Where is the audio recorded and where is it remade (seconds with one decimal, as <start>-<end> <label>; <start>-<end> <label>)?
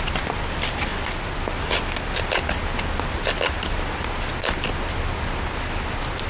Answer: 0.0-6.3 recorded